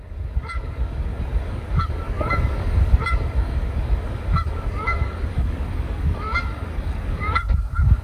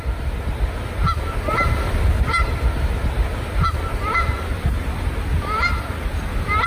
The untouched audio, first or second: second